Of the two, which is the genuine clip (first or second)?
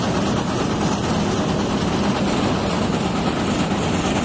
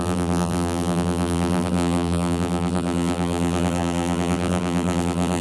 first